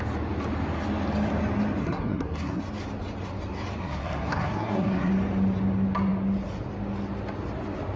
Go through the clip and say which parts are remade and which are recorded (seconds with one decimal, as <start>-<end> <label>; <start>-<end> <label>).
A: 0.0-1.8 recorded; 1.8-2.6 remade; 2.6-3.8 recorded; 3.8-5.1 remade; 5.1-8.0 recorded